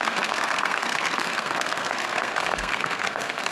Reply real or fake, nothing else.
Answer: fake